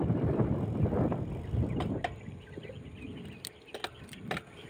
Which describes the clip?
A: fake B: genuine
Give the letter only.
B